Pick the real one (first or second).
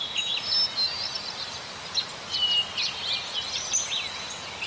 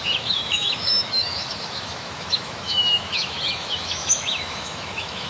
first